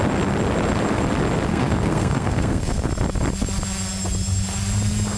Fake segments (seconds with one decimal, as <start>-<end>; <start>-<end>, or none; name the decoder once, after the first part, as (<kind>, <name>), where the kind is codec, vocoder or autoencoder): 1.5-2.9 (codec, SNAC)